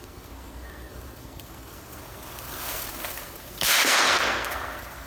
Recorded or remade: remade